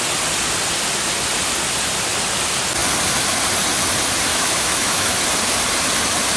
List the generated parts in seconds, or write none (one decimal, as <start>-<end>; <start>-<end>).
4.3-5.2